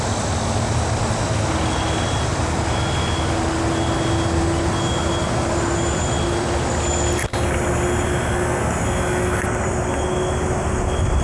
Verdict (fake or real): real